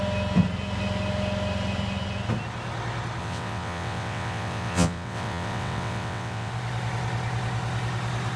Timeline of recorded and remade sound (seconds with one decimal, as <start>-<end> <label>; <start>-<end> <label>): 0.0-3.2 recorded; 3.2-6.5 remade; 6.5-8.4 recorded